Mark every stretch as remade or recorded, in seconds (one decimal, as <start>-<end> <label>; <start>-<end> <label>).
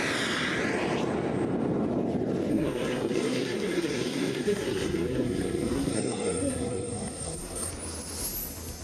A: 0.0-2.5 recorded; 2.5-7.7 remade; 7.7-8.8 recorded